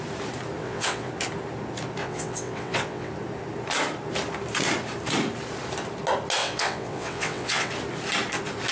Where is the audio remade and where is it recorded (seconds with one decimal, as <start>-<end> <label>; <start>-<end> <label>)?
0.0-0.6 recorded; 0.6-1.1 remade; 1.1-2.0 recorded; 2.0-3.1 remade; 3.1-6.4 recorded; 6.4-7.7 remade; 7.7-8.7 recorded